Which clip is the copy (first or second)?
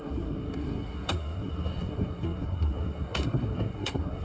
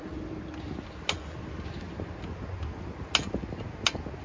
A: first